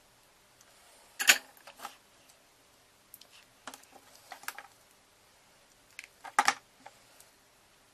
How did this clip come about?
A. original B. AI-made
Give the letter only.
A